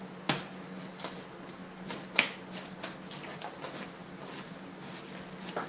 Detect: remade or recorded recorded